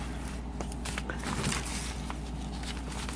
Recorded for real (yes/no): yes